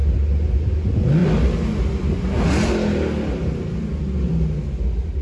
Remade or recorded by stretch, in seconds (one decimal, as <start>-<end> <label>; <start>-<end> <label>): 0.0-5.2 recorded